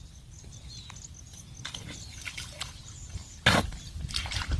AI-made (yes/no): no